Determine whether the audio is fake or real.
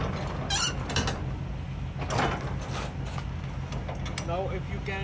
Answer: real